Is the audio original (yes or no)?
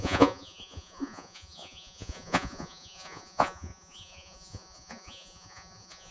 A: no